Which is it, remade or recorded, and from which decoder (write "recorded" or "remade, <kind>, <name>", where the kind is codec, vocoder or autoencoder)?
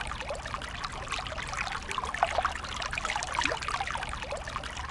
recorded